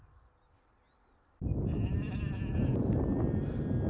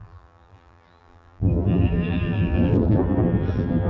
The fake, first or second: second